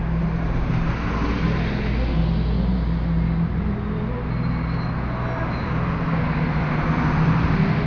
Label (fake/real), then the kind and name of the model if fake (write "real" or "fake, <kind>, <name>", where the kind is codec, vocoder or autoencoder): real